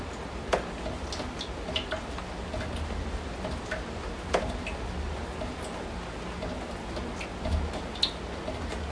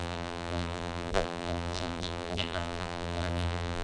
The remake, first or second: second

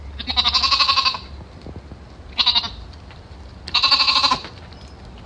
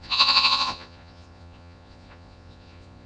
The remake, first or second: second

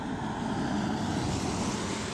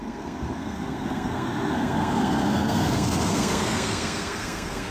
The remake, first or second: second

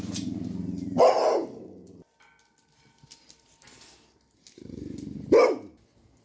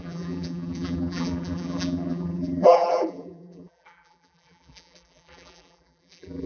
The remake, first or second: second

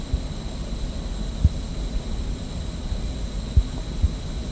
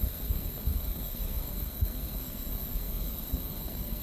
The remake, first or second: second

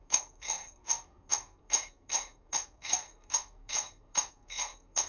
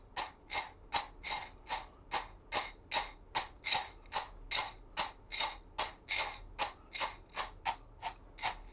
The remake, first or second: first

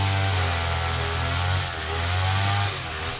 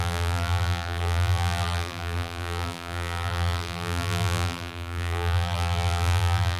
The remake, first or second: second